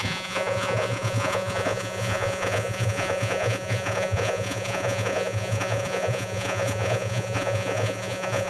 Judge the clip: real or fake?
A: fake